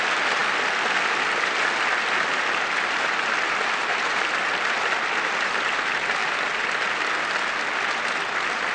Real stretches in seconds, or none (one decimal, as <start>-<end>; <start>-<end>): 0.0-8.7